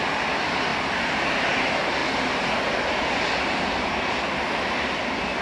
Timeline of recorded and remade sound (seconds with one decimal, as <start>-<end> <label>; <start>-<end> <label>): 0.0-5.4 recorded